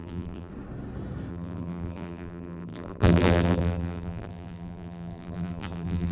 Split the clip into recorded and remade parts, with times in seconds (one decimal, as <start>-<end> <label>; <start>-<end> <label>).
0.0-0.5 remade; 0.5-1.3 recorded; 1.3-6.1 remade